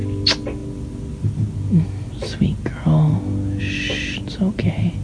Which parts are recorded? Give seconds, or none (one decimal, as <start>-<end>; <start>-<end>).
0.0-5.0